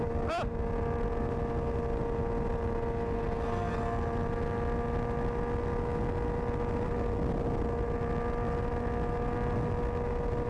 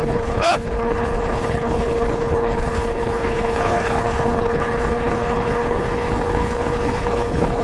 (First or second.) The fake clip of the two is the second